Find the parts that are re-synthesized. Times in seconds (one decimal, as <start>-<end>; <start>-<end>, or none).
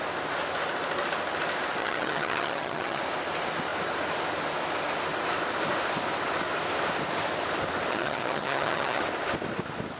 1.8-3.0; 7.9-9.0